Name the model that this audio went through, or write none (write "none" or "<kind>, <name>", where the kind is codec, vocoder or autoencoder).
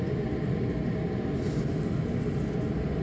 none